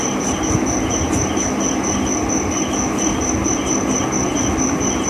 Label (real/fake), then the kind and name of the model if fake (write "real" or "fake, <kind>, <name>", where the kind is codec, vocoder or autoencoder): real